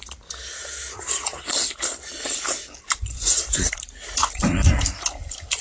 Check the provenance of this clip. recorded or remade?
recorded